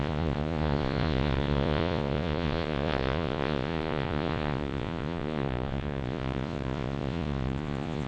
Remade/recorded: remade